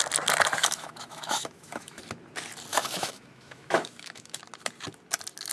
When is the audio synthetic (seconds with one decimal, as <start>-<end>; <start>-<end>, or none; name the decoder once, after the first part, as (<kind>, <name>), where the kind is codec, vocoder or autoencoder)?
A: 0.6-2.0 (autoencoder, DAC-VAE); 2.7-4.4